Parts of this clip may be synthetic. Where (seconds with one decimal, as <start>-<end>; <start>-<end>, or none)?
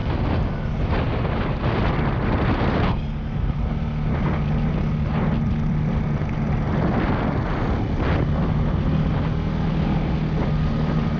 none